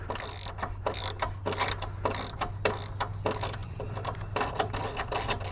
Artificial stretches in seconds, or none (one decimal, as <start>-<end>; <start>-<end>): 3.6-4.5